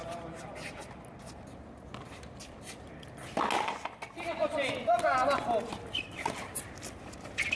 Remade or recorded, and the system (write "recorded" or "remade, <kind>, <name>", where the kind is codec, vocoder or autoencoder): recorded